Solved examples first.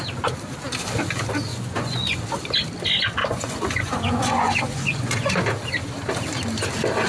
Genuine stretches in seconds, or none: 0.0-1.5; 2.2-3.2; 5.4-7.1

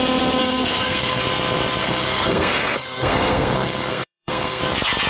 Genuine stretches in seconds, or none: 0.0-0.4; 1.2-1.8; 4.6-5.1

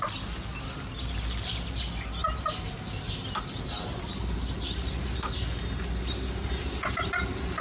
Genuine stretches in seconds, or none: 0.0-7.6

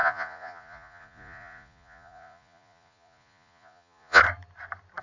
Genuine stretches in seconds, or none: 4.2-5.0

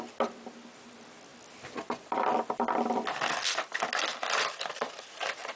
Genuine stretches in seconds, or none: 0.0-5.6

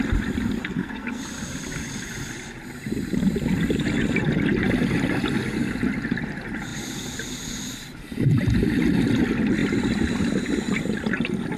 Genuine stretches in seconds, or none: 0.0-0.6; 1.2-11.6

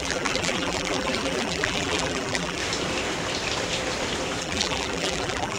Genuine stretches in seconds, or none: 2.6-4.4

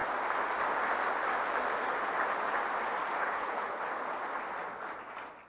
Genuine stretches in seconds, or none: 0.0-3.2; 3.8-5.5